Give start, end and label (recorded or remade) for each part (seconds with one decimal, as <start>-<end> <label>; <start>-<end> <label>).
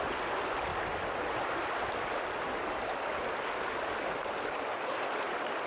0.0-5.7 recorded